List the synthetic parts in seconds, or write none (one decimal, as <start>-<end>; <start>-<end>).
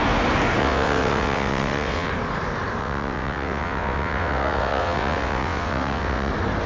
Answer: 0.6-2.1; 2.8-6.3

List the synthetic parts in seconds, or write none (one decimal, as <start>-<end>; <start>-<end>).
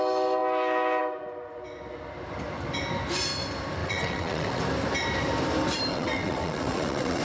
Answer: 3.8-4.6; 5.9-7.2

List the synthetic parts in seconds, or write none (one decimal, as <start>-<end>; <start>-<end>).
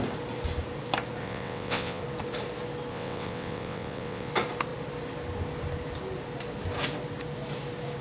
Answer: 1.2-2.0; 2.9-4.3